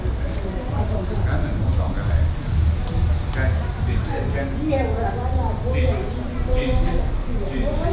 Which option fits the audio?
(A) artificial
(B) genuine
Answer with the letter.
B